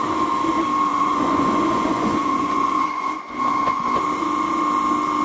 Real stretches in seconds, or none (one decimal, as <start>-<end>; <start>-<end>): 0.0-0.9; 4.0-5.2